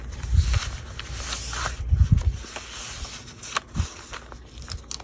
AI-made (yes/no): no